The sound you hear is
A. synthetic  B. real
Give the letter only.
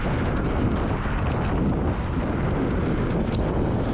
B